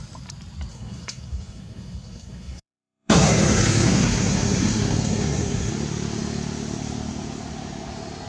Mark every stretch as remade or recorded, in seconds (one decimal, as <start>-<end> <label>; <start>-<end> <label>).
0.0-0.7 recorded; 0.7-5.7 remade; 5.7-8.3 recorded

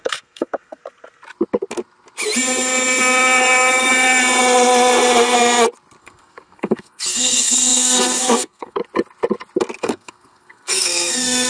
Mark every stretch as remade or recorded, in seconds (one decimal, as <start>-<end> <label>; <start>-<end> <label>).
0.0-0.8 remade; 0.8-6.0 recorded; 6.0-8.8 remade; 8.8-9.8 recorded; 9.8-11.5 remade

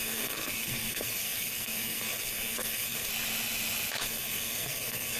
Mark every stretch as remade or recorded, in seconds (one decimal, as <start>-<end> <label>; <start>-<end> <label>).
0.0-3.1 remade; 3.1-4.0 recorded; 4.0-5.2 remade

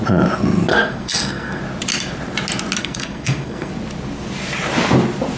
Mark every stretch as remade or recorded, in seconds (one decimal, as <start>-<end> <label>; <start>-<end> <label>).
0.0-0.7 recorded; 0.7-1.6 remade; 1.6-2.8 recorded; 2.8-3.7 remade; 3.7-5.4 recorded

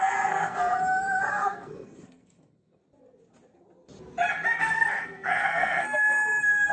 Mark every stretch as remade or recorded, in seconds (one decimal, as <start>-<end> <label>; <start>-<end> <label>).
0.0-0.7 remade; 0.7-1.3 recorded; 1.3-2.8 remade; 2.8-4.6 recorded; 4.6-6.7 remade